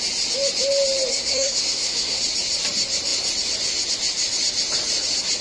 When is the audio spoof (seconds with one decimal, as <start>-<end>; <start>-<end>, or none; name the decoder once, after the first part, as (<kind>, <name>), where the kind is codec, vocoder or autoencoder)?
1.1-2.2 (codec, SNAC)